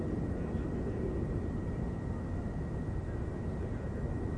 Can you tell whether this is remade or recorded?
recorded